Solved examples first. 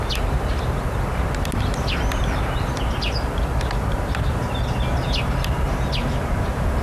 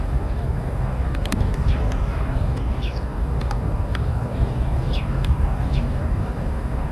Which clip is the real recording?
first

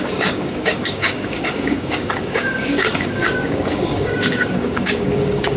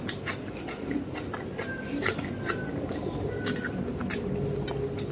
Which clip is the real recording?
second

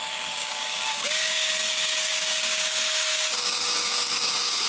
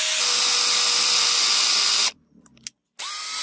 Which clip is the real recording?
second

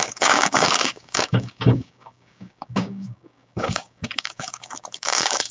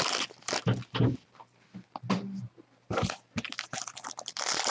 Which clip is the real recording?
second